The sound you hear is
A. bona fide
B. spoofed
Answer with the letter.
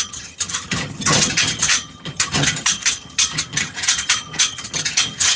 B